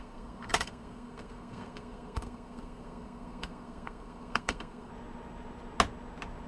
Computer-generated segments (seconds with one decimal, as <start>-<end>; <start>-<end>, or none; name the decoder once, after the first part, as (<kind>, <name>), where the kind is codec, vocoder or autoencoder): 0.0-4.9 (codec, SNAC)